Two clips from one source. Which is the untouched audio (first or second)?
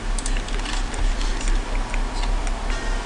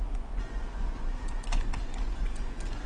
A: first